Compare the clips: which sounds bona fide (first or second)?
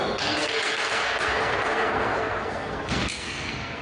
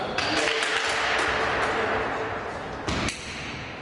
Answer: second